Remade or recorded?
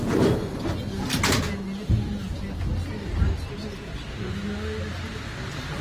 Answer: recorded